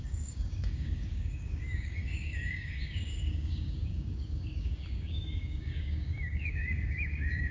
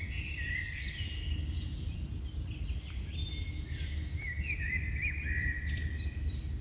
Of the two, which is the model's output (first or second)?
first